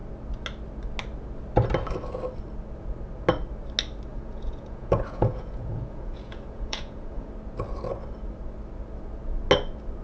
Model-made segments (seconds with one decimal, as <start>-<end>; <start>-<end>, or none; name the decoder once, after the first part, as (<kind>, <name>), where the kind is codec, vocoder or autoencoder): 4.1-7.3 (vocoder, Vocos)